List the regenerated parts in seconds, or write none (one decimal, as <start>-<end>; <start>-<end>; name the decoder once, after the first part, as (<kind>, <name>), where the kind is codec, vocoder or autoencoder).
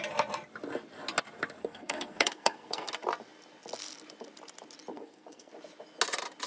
1.6-2.9 (codec, SNAC); 4.9-5.5